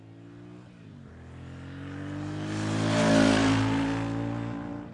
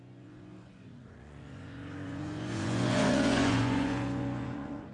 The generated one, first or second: second